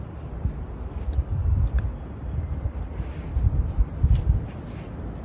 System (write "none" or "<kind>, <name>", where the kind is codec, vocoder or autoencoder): none